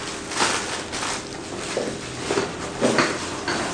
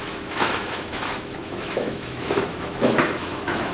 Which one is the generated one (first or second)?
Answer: second